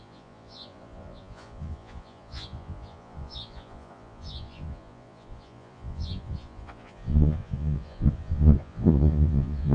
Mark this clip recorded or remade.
remade